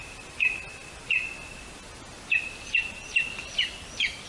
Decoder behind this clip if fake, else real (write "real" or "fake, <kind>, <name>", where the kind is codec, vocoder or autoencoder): real